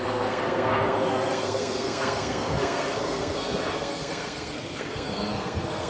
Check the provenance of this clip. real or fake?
fake